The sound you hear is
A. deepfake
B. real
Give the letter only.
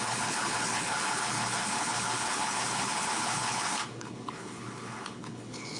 A